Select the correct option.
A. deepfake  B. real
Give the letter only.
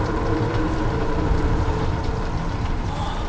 A